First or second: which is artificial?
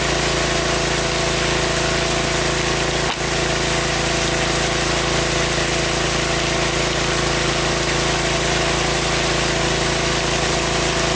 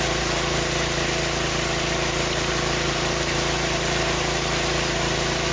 second